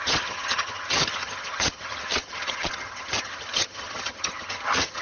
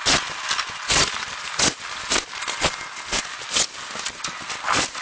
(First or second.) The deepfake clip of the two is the first